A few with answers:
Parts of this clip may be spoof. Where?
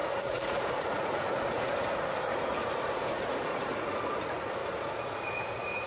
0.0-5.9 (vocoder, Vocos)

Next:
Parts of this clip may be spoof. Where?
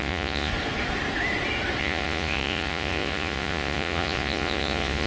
0.0-0.5 (vocoder, Vocos); 1.8-5.1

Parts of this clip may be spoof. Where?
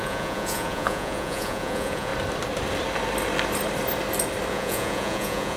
0.0-2.1 (vocoder, Vocos); 4.5-5.6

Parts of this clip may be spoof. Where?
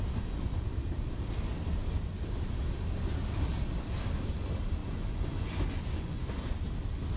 4.8-6.2 (vocoder, Vocos)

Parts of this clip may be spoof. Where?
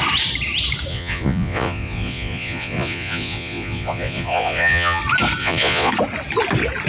0.9-5.0 (vocoder, Vocos); 5.4-5.9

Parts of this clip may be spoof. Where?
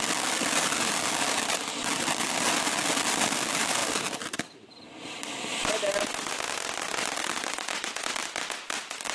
none